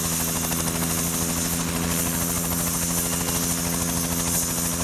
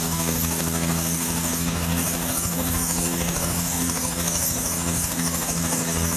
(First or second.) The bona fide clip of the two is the first